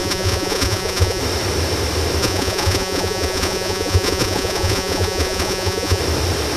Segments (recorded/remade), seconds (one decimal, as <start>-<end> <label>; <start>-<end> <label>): 0.0-1.2 remade; 1.2-2.2 recorded; 2.2-6.0 remade; 6.0-6.6 recorded